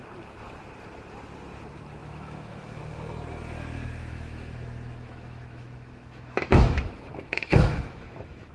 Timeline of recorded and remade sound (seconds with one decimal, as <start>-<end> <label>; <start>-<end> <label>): 0.0-2.0 recorded; 2.0-2.8 remade; 2.8-4.0 recorded; 4.0-8.5 remade